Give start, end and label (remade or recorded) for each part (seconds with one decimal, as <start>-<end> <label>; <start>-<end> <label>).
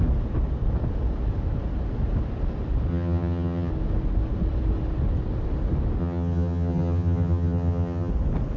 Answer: 0.0-2.9 recorded; 2.9-3.7 remade; 3.7-6.0 recorded; 6.0-8.1 remade; 8.1-8.6 recorded